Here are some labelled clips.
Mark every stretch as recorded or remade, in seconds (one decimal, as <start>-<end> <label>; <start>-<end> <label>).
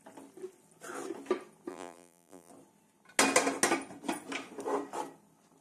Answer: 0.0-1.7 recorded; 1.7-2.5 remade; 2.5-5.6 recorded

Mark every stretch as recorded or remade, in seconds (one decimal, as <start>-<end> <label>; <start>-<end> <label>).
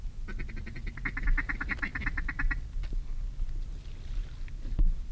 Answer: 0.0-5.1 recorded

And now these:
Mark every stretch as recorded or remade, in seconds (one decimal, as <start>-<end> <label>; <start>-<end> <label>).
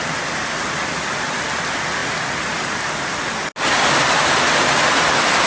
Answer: 0.0-5.5 recorded